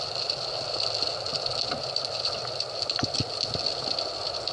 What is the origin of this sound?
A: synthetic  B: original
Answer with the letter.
B